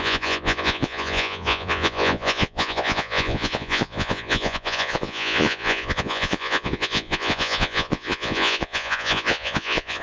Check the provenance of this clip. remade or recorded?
remade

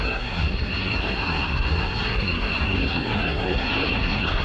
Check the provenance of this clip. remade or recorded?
remade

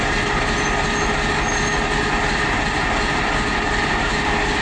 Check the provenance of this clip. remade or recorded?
recorded